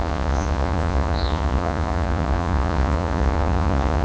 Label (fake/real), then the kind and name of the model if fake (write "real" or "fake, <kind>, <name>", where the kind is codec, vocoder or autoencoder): fake, vocoder, Vocos